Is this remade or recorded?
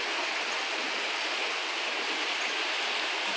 recorded